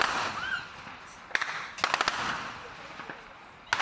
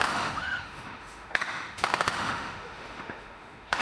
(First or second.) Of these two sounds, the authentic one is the first